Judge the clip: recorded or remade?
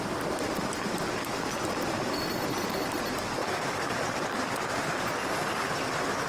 recorded